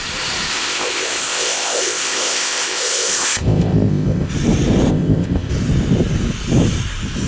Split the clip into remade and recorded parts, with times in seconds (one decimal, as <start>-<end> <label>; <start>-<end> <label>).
0.0-0.5 recorded; 0.5-4.3 remade; 4.3-4.9 recorded; 4.9-5.5 remade; 5.5-7.3 recorded